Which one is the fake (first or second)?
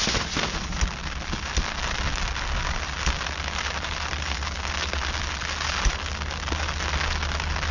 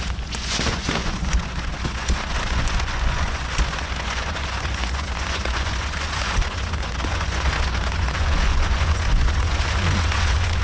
second